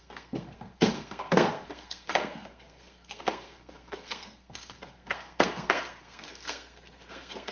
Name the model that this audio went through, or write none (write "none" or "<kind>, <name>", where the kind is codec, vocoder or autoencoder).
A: codec, SNAC